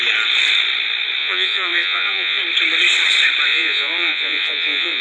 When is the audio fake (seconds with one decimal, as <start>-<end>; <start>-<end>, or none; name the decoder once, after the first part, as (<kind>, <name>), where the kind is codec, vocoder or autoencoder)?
1.2-2.4 (vocoder, Vocos); 3.5-5.0